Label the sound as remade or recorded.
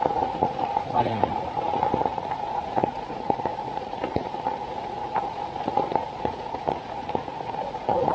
remade